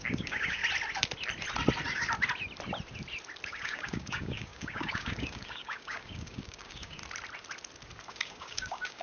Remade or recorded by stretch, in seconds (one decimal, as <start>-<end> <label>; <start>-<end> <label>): 0.0-0.6 remade; 0.6-3.5 recorded; 3.5-7.0 remade; 7.0-8.1 recorded; 8.1-9.0 remade